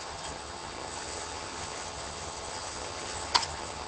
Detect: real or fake fake